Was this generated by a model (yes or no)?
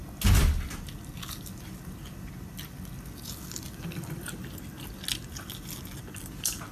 no